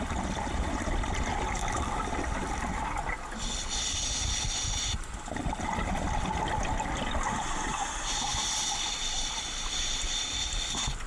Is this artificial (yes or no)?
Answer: no